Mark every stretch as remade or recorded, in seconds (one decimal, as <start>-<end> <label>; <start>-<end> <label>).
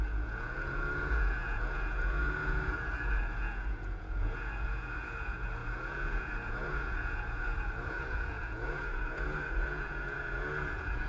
0.0-11.1 remade